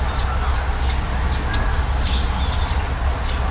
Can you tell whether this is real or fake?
real